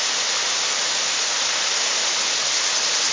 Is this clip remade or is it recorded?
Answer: recorded